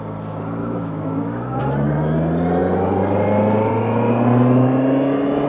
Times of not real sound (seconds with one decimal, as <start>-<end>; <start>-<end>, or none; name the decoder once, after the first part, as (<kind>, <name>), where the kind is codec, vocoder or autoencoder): 0.6-1.6 (autoencoder, DAC-VAE)

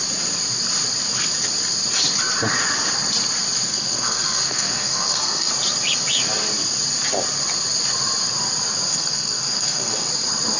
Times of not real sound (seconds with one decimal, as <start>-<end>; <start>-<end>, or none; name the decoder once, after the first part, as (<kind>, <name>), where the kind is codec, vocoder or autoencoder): 3.7-5.5 (codec, SNAC); 8.9-10.1

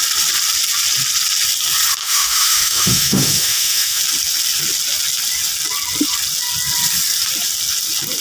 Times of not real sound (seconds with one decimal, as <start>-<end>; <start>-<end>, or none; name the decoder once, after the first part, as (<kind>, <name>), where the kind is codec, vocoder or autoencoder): 2.0-4.0 (autoencoder, DAC-VAE)